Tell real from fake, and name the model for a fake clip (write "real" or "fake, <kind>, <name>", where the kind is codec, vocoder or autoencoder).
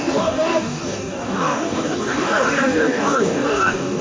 fake, codec, DAC